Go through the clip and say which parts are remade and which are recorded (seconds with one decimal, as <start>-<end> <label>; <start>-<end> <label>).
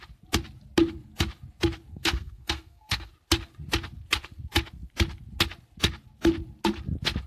0.0-1.9 recorded; 1.9-3.1 remade; 3.1-7.3 recorded